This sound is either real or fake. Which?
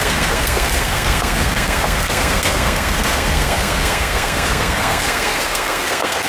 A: fake